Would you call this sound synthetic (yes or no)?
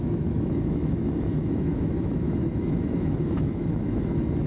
yes